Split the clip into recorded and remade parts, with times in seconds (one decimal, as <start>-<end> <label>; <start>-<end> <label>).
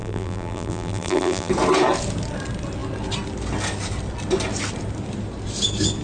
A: 0.0-1.5 remade; 1.5-6.0 recorded